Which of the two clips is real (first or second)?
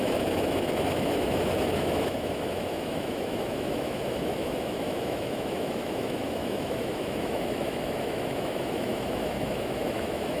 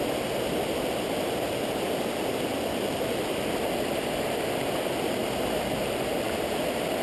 second